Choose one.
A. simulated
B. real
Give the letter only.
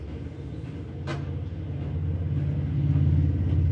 B